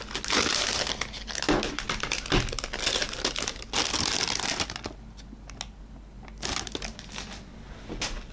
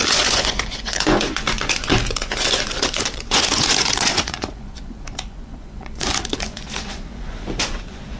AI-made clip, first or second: second